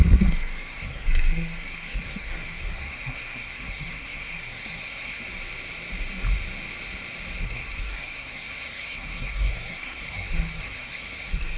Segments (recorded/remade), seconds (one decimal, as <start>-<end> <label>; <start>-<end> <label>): 0.0-5.2 remade; 5.2-7.4 recorded; 7.4-11.6 remade